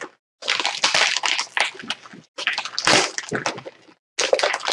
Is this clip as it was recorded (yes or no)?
yes